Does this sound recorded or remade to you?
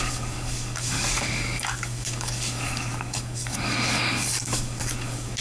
remade